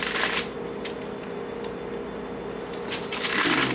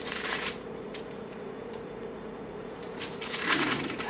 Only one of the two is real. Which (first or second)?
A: first